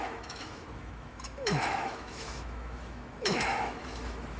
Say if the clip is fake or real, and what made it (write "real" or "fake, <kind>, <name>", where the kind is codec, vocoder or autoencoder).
fake, autoencoder, DAC-VAE